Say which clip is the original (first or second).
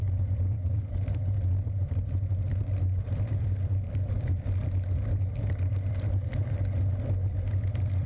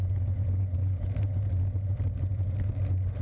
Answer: second